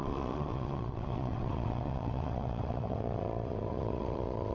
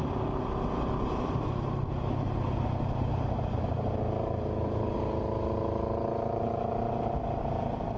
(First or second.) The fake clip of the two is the first